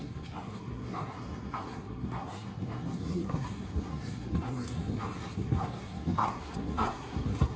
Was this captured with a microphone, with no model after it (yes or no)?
no